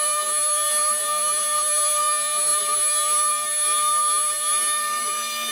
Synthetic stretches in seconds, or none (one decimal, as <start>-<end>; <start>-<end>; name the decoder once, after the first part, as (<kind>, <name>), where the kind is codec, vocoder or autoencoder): none